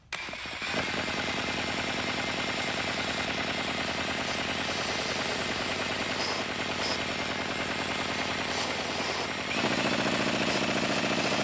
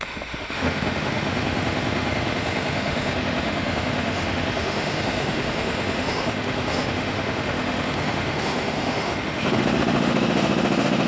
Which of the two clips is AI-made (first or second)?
second